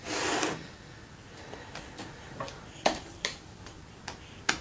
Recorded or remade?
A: recorded